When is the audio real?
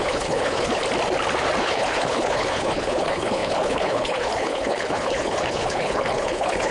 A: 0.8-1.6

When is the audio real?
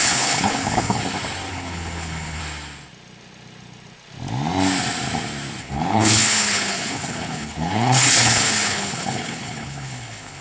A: 1.0-1.5; 2.4-5.6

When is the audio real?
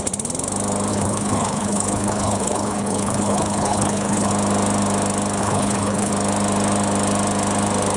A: 0.0-0.9; 4.3-5.4; 6.1-8.0